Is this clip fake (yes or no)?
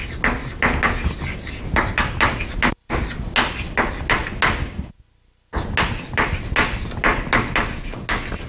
no